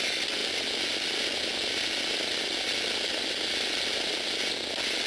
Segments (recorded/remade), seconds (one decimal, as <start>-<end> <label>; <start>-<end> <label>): 0.0-5.1 recorded